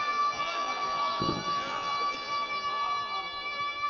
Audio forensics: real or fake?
fake